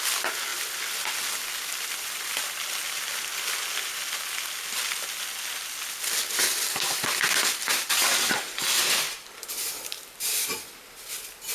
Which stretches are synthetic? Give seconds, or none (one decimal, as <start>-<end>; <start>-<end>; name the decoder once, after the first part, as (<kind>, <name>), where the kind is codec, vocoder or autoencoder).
0.5-2.4 (vocoder, BigVGAN v2); 8.0-9.7